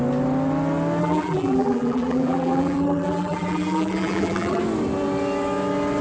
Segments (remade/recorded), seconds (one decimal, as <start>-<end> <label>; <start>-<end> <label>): 0.0-1.0 recorded; 1.0-4.6 remade; 4.6-6.0 recorded